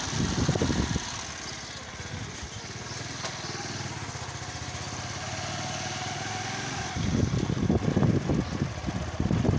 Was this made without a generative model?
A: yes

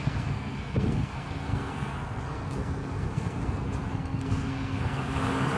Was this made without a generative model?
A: no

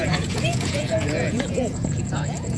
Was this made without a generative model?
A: no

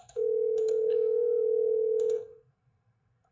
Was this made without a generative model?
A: no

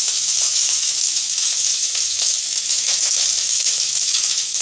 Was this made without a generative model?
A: no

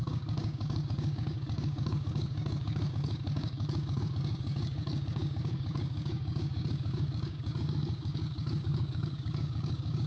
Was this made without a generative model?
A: no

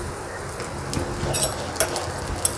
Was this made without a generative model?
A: yes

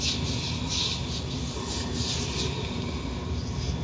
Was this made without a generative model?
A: yes